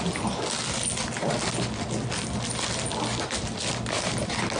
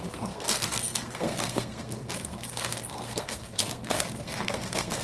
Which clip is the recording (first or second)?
first